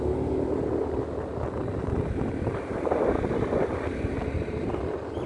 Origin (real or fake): real